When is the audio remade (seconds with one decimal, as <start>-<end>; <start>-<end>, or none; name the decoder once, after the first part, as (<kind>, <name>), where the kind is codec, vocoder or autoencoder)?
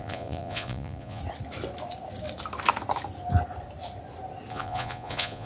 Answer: 0.0-1.2 (vocoder, Vocos); 4.5-5.5